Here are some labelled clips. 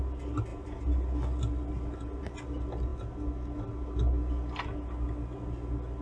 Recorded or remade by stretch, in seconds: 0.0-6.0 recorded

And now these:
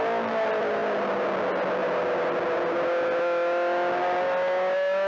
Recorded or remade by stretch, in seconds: 0.0-5.1 recorded

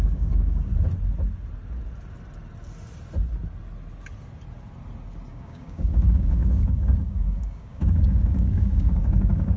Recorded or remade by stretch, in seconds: 0.0-0.7 remade; 0.7-5.3 recorded; 5.3-9.6 remade

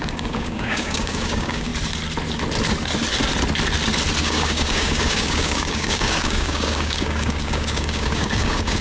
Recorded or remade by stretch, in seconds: 0.0-1.7 remade; 1.7-4.2 recorded; 4.2-8.8 remade